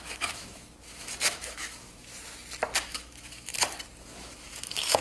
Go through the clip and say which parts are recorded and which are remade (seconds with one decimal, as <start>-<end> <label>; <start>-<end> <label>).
0.0-2.1 remade; 2.1-2.8 recorded; 2.8-3.5 remade; 3.5-4.0 recorded; 4.0-5.0 remade